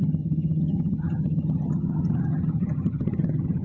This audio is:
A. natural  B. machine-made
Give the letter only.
B